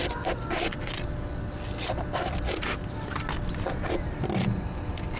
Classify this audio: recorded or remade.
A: recorded